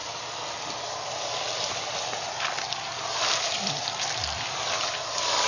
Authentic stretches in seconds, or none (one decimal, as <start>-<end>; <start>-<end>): 0.0-5.5